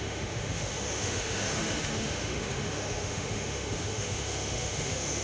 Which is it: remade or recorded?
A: remade